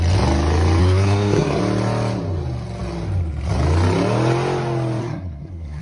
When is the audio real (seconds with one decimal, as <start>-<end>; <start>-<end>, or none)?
0.0-0.8; 1.6-5.0